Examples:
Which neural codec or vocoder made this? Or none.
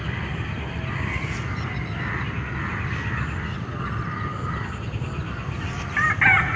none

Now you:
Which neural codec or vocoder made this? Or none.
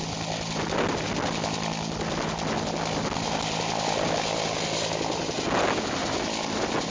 none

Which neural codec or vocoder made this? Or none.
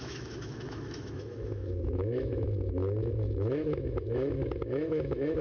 autoencoder, DAC-VAE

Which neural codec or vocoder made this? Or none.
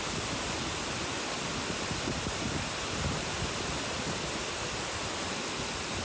none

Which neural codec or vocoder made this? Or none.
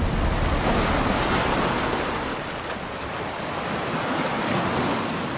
none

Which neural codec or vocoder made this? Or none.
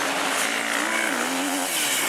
none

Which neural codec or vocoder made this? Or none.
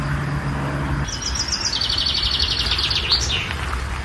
none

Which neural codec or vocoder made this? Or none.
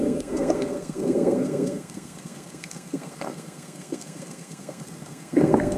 codec, SNAC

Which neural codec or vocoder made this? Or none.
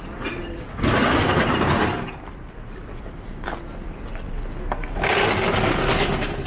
none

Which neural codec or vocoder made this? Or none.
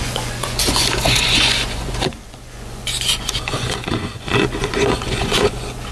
vocoder, Vocos